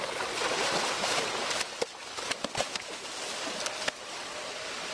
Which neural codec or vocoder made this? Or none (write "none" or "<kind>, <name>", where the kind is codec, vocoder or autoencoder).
vocoder, BigVGAN v2